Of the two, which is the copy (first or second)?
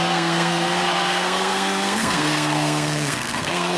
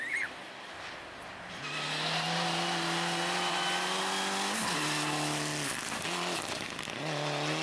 first